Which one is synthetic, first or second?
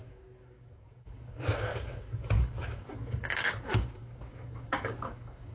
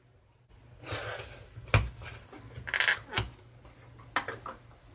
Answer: first